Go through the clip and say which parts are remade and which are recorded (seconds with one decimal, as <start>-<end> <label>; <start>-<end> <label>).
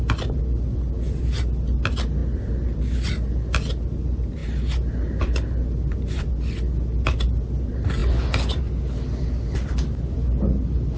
0.0-11.0 recorded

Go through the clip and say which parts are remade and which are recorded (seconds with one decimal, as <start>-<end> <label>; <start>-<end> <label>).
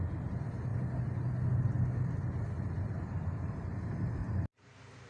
0.0-0.7 remade; 0.7-3.8 recorded; 3.8-4.2 remade; 4.2-5.1 recorded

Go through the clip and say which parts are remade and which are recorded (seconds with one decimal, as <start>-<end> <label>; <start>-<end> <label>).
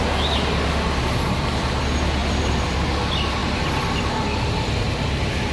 0.0-2.2 recorded; 2.2-2.9 remade; 2.9-5.5 recorded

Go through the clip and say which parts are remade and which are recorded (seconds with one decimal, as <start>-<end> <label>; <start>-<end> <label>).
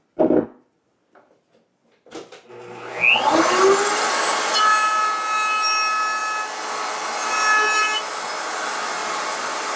0.0-9.0 recorded; 9.0-9.8 remade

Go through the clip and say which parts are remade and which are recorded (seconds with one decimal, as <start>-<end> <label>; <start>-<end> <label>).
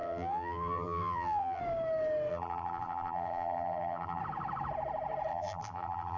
0.0-1.6 remade; 1.6-2.3 recorded; 2.3-4.2 remade; 4.2-5.3 recorded; 5.3-6.2 remade